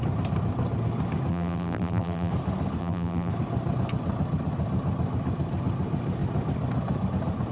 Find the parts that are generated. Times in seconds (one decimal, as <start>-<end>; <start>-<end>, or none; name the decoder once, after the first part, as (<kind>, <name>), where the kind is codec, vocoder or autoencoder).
1.3-2.3 (vocoder, BigVGAN v2); 2.8-3.3